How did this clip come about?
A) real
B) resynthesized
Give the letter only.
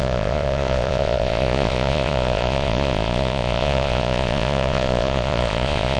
B